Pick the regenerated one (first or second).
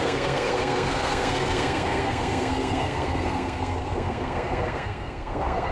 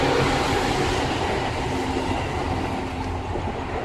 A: first